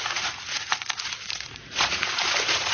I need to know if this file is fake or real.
fake